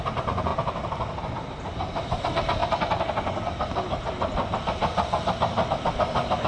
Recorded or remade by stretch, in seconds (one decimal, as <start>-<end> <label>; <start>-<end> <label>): 0.0-6.5 recorded